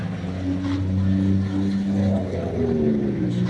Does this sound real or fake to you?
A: real